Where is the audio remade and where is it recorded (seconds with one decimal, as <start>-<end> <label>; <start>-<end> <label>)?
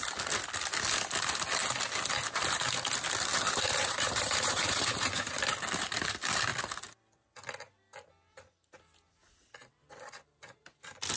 0.0-3.3 recorded; 3.3-5.3 remade; 5.3-11.2 recorded